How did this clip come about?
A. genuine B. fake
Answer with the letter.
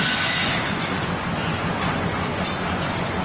B